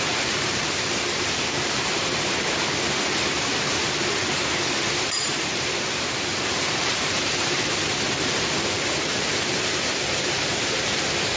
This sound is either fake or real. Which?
fake